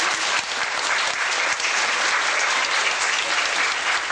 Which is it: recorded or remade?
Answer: recorded